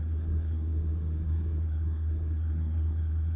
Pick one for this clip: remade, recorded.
remade